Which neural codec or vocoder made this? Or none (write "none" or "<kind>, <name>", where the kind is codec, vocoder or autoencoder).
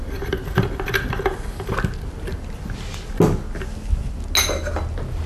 none